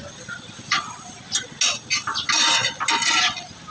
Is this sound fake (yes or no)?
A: no